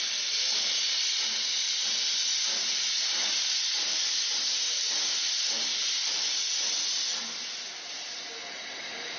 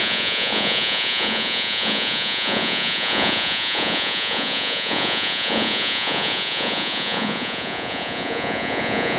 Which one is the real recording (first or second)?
first